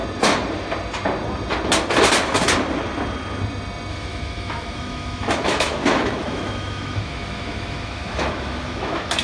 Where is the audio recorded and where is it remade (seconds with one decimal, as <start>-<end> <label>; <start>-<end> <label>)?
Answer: 0.0-3.9 recorded; 3.9-9.2 remade